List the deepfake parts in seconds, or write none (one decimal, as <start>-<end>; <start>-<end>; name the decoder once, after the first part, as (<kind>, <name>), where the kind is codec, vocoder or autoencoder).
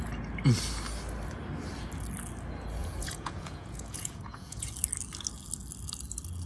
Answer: 2.8-4.7 (vocoder, Vocos)